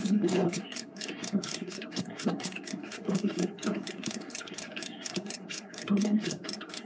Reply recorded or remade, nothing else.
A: remade